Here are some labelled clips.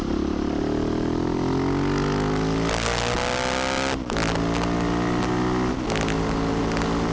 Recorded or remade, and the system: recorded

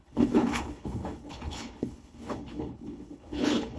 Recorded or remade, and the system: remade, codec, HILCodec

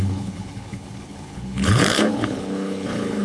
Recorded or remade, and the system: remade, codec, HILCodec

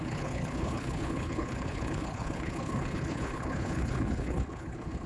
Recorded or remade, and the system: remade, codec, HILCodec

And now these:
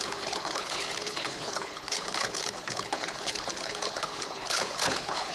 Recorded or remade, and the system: remade, codec, HILCodec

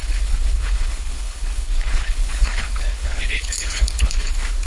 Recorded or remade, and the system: remade, codec, HILCodec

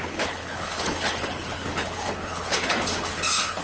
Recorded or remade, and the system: remade, codec, HILCodec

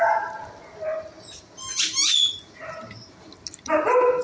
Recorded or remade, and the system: recorded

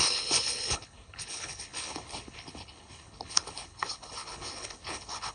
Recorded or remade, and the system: remade, codec, HILCodec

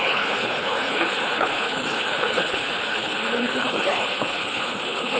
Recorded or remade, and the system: remade, codec, HILCodec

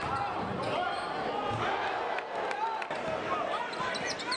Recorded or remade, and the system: recorded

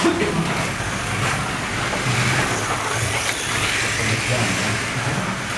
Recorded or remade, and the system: recorded